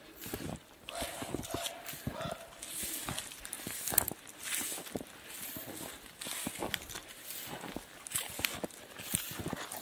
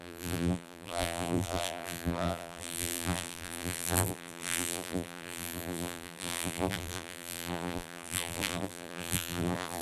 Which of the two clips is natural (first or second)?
first